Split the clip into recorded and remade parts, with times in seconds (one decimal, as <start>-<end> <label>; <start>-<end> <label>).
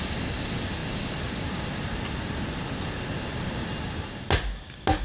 0.0-5.0 recorded